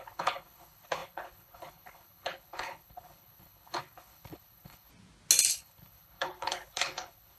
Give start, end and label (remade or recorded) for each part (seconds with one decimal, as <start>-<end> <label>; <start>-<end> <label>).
0.0-4.9 remade; 4.9-5.5 recorded; 5.5-7.4 remade